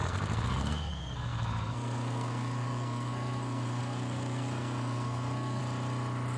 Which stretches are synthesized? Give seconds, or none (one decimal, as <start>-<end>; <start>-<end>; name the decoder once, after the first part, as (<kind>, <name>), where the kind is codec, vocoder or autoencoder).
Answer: 0.0-5.6 (codec, SNAC)